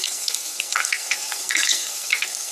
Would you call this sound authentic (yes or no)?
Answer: no